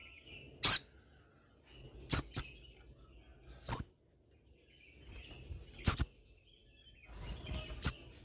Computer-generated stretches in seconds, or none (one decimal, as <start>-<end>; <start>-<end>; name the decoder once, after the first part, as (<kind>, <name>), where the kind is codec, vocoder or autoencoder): none